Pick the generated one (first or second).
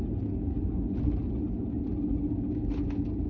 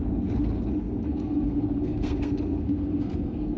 second